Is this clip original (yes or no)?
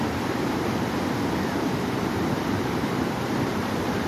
no